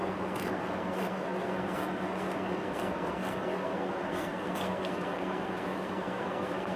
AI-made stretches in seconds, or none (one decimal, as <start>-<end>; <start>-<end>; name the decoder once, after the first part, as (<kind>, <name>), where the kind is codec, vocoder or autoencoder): 0.0-6.8 (codec, SNAC)